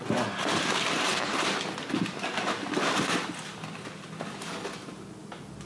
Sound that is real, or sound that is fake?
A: real